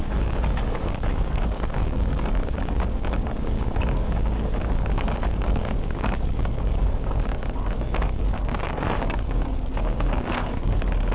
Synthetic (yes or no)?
yes